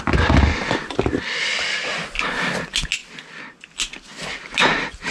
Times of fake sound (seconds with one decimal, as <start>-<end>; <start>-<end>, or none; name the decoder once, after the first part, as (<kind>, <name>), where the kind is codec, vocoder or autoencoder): none